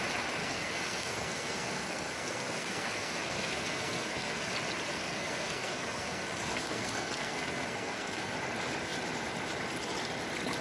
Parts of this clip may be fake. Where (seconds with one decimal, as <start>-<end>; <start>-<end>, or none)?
0.4-4.5; 4.9-8.3